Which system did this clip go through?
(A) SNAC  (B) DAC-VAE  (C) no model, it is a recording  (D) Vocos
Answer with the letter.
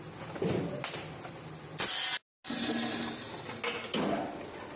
C